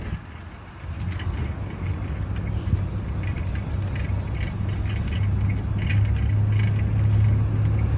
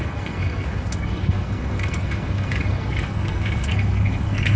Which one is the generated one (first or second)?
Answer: second